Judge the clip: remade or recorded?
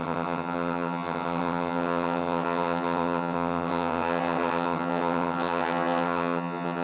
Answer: remade